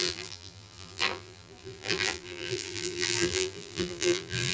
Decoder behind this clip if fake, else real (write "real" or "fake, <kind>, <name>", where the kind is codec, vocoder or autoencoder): fake, vocoder, BigVGAN v2